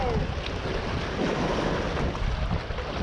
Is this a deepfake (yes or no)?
no